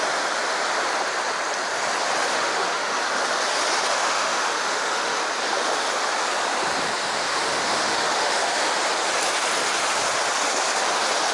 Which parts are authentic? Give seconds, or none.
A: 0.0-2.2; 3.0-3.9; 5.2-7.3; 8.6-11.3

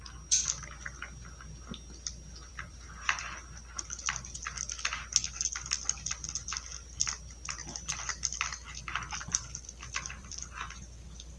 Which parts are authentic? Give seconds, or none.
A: 0.0-2.5; 3.2-7.6; 10.7-11.4

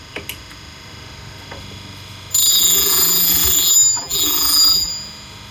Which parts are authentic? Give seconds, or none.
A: 0.0-2.5; 4.9-5.5

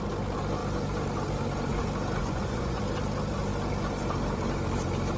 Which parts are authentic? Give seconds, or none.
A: 0.0-2.2; 2.8-5.2

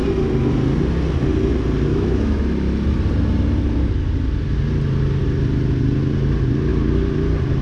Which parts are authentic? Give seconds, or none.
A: 0.0-1.9; 2.4-7.6

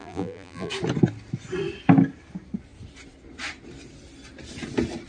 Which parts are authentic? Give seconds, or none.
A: 0.7-5.1